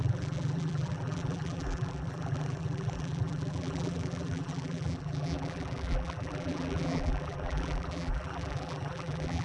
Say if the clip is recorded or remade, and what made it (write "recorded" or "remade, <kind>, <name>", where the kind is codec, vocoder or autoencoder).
remade, vocoder, BigVGAN v2